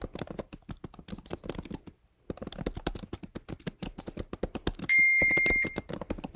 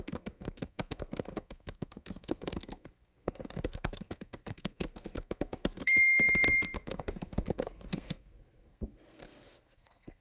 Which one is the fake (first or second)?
second